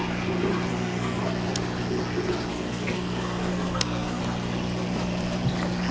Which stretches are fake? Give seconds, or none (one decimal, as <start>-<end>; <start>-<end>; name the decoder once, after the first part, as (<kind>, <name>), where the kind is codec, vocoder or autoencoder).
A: 0.7-1.2 (codec, SNAC); 2.5-4.2